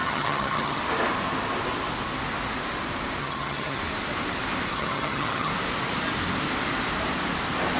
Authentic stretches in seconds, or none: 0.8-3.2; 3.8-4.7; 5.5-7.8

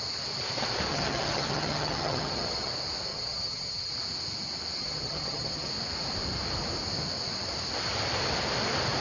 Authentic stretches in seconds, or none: 0.0-0.9; 2.7-3.1; 3.9-4.8; 5.7-9.0

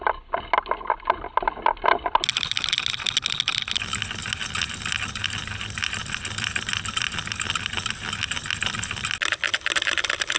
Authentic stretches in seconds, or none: 0.0-10.4

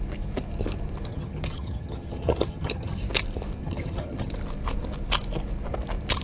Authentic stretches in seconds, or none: 0.0-1.1; 3.0-3.6; 4.3-6.2

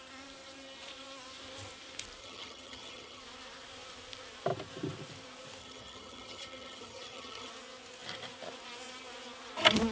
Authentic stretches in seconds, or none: 0.0-2.2; 3.2-5.6; 7.5-9.9

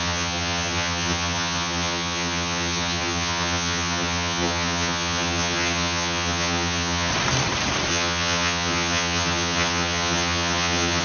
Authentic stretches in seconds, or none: 7.1-7.9

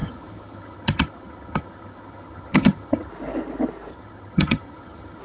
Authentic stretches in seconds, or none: 3.1-3.9